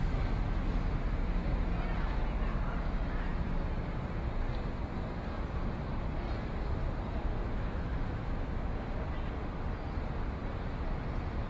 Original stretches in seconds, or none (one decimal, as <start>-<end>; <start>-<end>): 0.0-7.4; 8.7-11.5